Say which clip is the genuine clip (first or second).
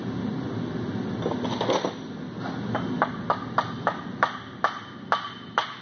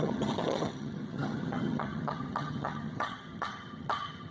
first